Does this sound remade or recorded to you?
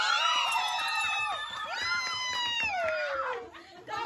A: remade